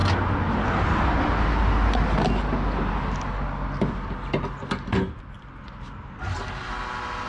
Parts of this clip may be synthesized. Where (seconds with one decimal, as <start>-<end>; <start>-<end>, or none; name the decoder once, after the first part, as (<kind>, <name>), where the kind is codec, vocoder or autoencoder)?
none